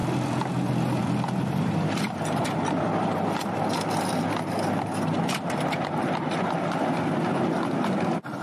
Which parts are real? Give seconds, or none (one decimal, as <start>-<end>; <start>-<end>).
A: 0.5-1.0; 4.6-8.4